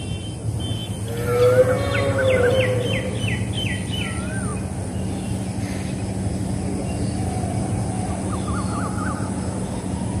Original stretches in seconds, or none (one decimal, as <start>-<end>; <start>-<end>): 0.0-10.2